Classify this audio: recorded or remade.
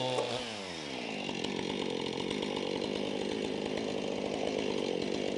recorded